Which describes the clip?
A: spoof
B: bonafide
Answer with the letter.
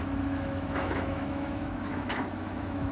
A